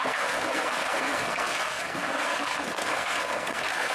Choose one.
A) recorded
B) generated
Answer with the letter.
B